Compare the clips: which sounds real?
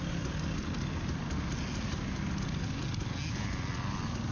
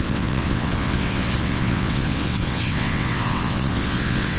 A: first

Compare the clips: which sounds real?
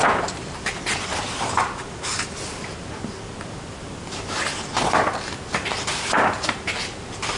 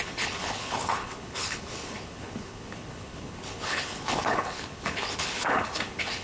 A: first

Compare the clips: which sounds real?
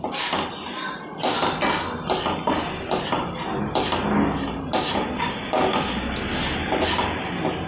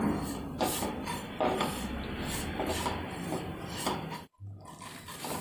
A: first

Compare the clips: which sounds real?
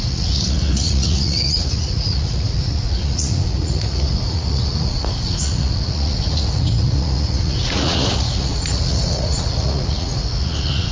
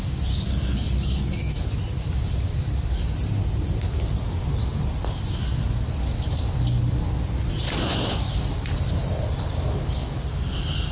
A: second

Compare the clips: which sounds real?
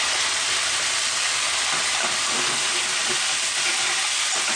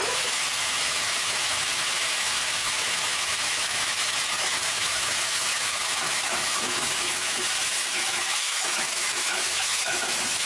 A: first